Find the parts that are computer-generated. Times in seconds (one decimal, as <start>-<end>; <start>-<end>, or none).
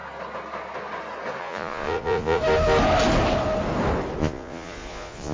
1.4-2.4; 4.2-5.3